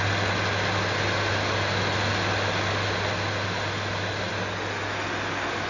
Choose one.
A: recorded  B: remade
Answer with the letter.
A